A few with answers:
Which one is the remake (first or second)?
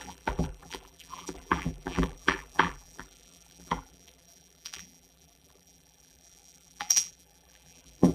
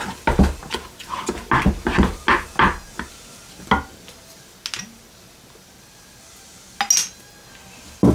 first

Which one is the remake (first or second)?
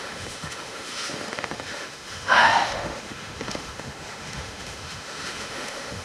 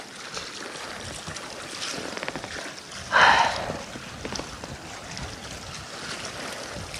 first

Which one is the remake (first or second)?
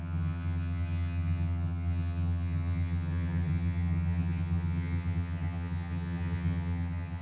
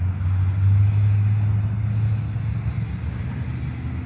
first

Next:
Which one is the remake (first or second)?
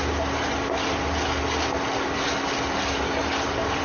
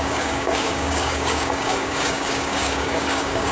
second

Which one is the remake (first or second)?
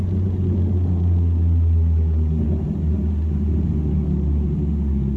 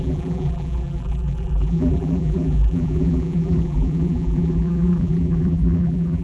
second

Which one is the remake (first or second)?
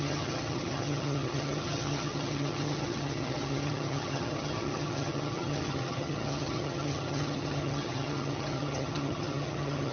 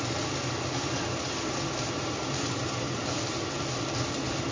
first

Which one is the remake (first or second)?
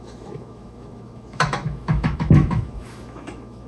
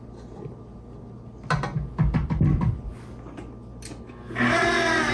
first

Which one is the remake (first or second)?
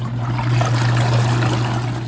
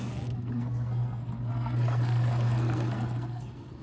second